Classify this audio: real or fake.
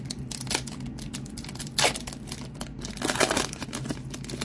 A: real